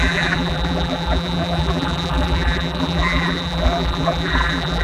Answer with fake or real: fake